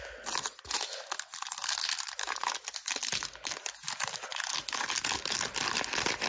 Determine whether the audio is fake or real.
real